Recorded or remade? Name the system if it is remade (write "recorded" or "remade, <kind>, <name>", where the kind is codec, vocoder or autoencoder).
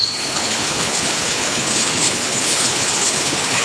remade, codec, HILCodec